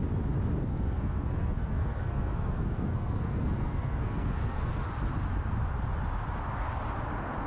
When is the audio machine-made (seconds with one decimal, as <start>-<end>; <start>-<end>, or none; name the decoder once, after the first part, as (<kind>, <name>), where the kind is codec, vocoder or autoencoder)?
0.7-4.9 (codec, SNAC)